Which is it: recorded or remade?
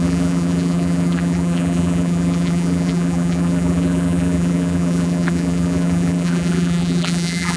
remade